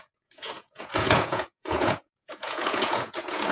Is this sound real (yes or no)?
no